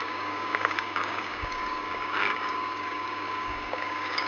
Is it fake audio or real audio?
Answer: fake